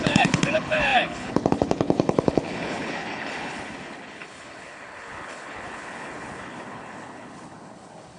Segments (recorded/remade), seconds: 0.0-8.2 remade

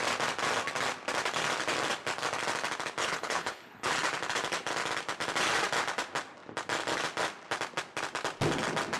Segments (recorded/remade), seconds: 0.0-3.0 recorded; 3.0-3.9 remade; 3.9-9.0 recorded

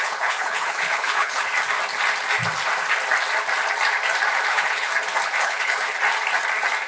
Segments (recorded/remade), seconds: 0.0-1.5 remade; 1.5-4.5 recorded; 4.5-4.9 remade; 4.9-5.4 recorded; 5.4-6.0 remade; 6.0-6.9 recorded

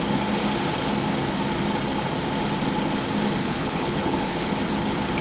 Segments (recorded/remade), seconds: 0.0-3.4 recorded; 3.4-4.5 remade; 4.5-5.2 recorded

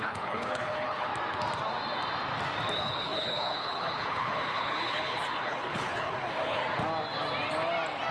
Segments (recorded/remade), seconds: 0.0-1.1 remade; 1.1-2.7 recorded; 2.7-6.6 remade; 6.6-8.1 recorded

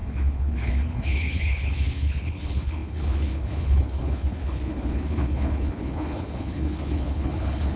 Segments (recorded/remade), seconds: 0.0-7.8 remade

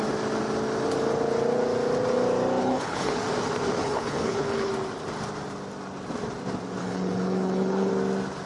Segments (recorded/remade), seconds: 0.0-2.6 recorded; 2.6-3.2 remade; 3.2-3.8 recorded; 3.8-4.7 remade; 4.7-6.8 recorded; 6.8-7.9 remade; 7.9-8.5 recorded

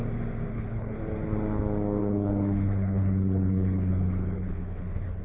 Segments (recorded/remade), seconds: 0.0-0.5 recorded; 0.5-1.0 remade; 1.0-2.0 recorded; 2.0-5.2 remade